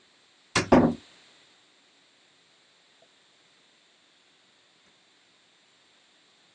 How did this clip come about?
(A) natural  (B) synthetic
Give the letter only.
A